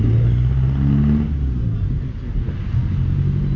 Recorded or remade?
recorded